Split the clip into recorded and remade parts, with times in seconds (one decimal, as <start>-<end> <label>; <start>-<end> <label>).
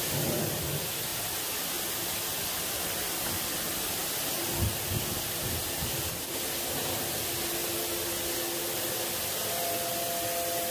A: 0.0-10.7 recorded